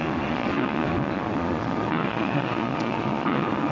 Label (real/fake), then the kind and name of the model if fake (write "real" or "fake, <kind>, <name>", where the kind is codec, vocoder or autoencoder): fake, vocoder, Vocos